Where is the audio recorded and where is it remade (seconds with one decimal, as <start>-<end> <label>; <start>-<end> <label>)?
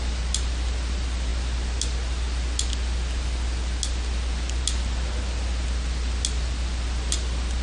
0.0-7.6 recorded